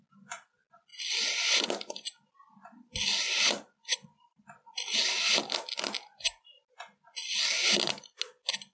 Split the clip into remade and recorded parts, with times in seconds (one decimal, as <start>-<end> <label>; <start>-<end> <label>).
0.0-3.9 recorded; 3.9-5.3 remade; 5.3-8.7 recorded